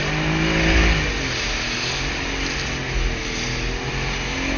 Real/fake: real